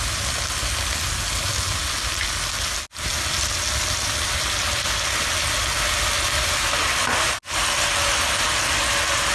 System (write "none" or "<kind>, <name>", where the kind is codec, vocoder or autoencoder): none